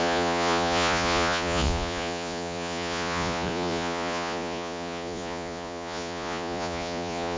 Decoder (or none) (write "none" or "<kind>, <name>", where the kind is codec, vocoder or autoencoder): vocoder, Vocos